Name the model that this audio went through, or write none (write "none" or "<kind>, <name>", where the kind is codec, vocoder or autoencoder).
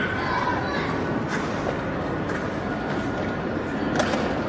none